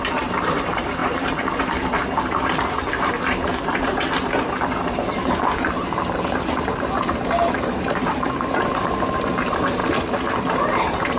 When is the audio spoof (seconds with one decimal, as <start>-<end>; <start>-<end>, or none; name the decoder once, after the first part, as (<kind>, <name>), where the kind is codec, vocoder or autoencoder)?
0.0-9.8 (vocoder, BigVGAN v2); 10.5-11.2